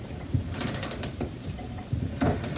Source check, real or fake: fake